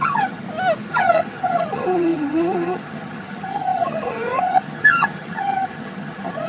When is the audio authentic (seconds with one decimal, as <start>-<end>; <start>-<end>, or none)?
0.4-0.9